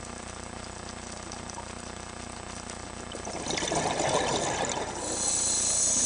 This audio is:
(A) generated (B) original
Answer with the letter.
B